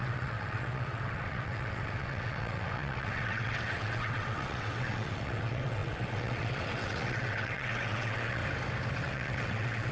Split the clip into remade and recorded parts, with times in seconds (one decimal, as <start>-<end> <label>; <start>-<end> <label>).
0.0-8.4 remade; 8.4-9.0 recorded; 9.0-9.9 remade